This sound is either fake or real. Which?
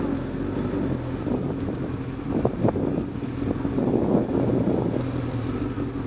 real